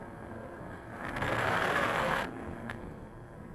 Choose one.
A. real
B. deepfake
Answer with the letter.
B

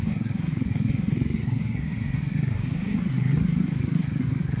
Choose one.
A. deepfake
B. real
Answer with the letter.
A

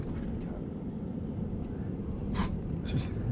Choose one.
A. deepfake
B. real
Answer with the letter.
B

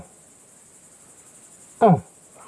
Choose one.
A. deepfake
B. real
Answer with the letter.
B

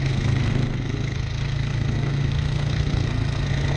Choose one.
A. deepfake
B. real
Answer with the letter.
A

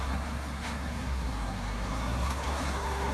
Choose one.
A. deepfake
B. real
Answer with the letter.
A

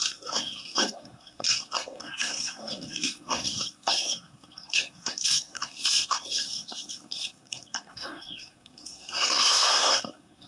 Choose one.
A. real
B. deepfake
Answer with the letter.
B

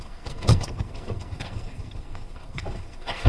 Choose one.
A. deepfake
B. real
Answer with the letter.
A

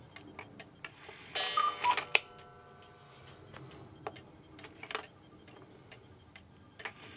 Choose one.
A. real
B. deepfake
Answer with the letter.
A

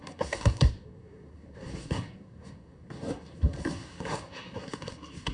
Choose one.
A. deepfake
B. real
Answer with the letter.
A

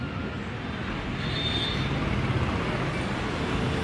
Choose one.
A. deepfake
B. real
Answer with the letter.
B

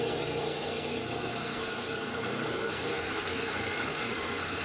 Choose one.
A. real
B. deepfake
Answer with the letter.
B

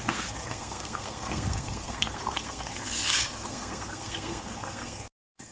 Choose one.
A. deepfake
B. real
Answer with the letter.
A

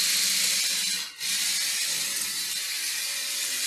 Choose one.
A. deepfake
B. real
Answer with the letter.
B